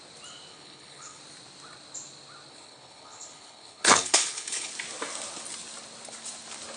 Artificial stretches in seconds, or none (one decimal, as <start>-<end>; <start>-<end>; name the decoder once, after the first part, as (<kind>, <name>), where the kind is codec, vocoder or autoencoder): 0.5-1.2 (codec, HILCodec); 2.5-4.7

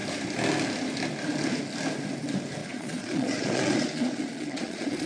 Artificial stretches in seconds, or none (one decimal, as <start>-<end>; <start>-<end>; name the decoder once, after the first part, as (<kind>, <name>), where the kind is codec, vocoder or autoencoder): 2.6-5.1 (vocoder, Vocos)

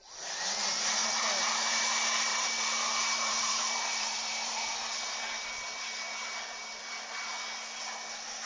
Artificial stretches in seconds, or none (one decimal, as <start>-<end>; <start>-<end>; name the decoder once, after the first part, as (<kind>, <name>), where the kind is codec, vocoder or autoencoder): 1.0-1.8 (vocoder, BigVGAN v2); 2.3-7.2

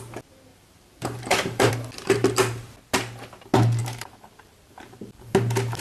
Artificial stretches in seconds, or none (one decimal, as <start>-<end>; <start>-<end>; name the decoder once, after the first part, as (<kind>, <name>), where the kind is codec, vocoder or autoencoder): 0.5-1.7 (vocoder, BigVGAN v2); 3.8-5.3

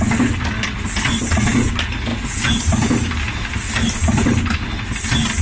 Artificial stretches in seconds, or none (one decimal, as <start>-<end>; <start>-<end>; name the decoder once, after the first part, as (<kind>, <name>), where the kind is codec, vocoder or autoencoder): none

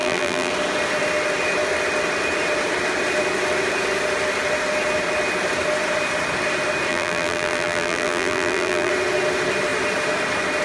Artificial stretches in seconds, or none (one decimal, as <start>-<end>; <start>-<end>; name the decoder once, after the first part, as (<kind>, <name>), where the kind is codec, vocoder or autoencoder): 0.0-0.5 (vocoder, BigVGAN v2); 6.9-8.9

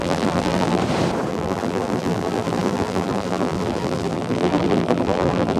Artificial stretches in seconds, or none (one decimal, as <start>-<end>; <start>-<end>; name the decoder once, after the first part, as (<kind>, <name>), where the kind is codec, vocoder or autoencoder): 0.0-0.8 (vocoder, BigVGAN v2); 1.3-5.6